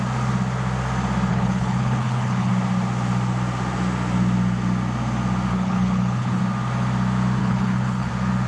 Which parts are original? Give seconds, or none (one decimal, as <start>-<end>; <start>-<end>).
0.0-1.3; 2.5-5.5; 6.4-7.4; 8.1-8.5